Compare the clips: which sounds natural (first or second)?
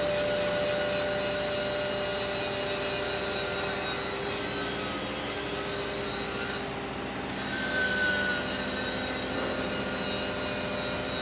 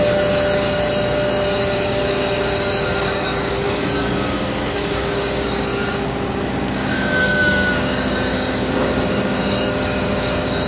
first